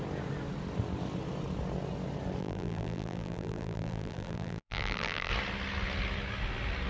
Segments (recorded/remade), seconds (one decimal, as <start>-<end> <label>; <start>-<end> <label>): 0.0-2.4 recorded; 2.4-5.3 remade; 5.3-6.9 recorded